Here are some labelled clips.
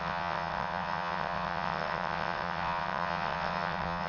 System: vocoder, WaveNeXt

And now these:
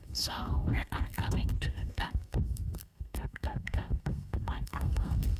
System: codec, SNAC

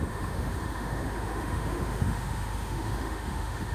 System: autoencoder, DAC-VAE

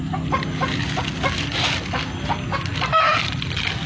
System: none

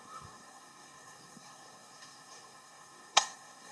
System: codec, SNAC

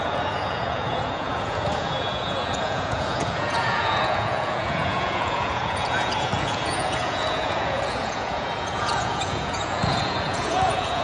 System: vocoder, Vocos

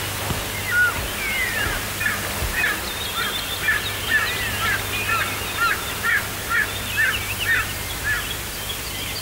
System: none